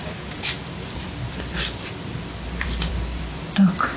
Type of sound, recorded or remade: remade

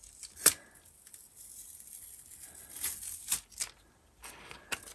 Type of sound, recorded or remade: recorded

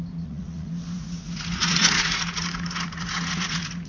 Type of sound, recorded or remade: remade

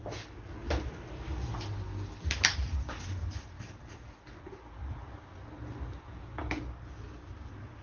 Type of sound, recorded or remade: recorded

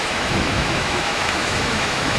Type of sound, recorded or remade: remade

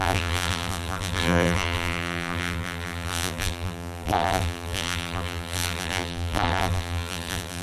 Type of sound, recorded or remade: remade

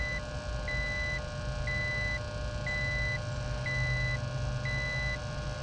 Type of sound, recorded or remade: recorded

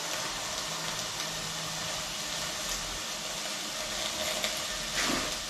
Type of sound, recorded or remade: recorded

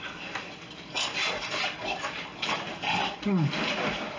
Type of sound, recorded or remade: recorded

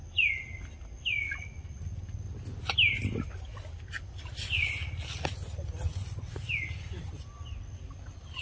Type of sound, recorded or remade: recorded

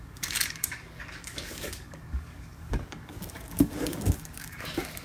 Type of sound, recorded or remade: remade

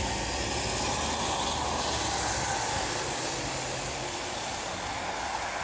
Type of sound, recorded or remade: recorded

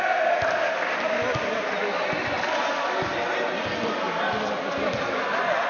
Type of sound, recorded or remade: recorded